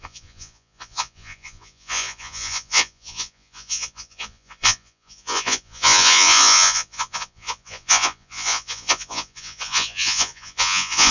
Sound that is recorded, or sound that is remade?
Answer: remade